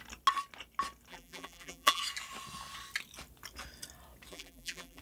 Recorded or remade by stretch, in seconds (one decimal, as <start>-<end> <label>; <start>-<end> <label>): 0.0-1.1 recorded; 1.1-2.0 remade; 2.0-4.3 recorded; 4.3-5.0 remade